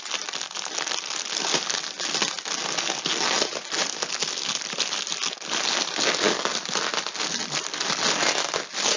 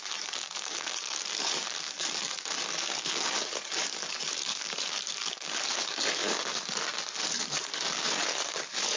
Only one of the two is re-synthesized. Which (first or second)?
second